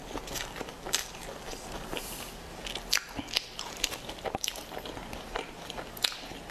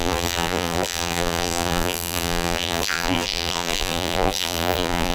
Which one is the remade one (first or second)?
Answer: second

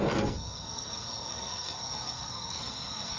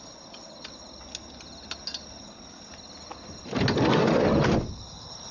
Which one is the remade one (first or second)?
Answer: first